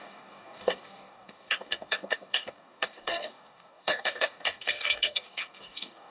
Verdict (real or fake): fake